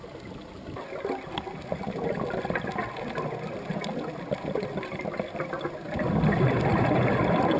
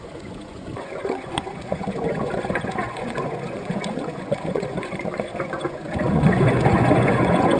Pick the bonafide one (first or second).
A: first